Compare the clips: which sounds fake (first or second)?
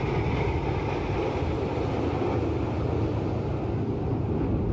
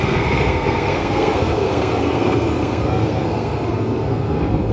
second